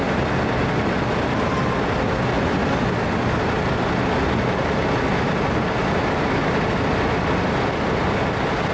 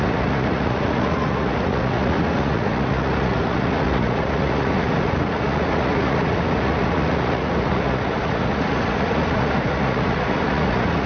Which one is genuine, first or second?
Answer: first